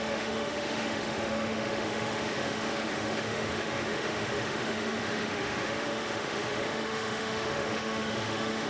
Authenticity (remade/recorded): remade